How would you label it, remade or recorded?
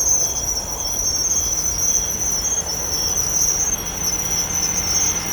recorded